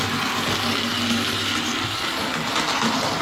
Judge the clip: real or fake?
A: real